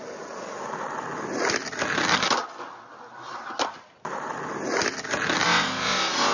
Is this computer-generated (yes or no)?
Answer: no